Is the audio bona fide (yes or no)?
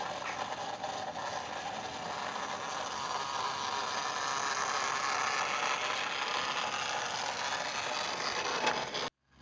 yes